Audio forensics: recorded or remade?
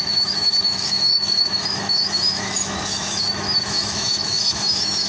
remade